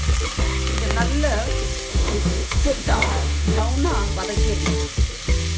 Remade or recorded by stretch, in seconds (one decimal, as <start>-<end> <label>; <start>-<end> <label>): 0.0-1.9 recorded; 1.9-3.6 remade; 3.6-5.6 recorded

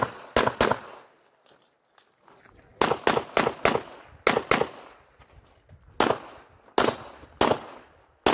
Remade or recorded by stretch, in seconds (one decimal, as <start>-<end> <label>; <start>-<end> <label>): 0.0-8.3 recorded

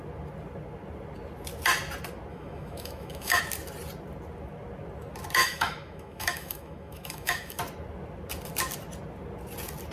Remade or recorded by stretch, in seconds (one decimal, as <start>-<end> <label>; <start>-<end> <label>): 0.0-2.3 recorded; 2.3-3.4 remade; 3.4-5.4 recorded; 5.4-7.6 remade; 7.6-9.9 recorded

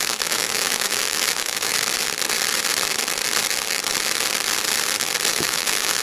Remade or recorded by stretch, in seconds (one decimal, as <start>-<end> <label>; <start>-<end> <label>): 0.0-1.7 remade; 1.7-5.3 recorded; 5.3-6.0 remade

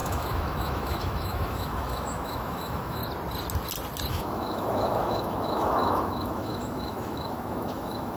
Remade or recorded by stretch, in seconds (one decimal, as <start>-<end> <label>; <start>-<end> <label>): 0.0-3.0 remade; 3.0-4.1 recorded; 4.1-8.2 remade

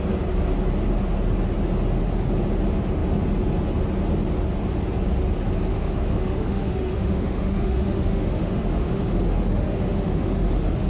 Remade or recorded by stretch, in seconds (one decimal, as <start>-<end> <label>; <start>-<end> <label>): 0.0-5.7 recorded; 5.7-10.9 remade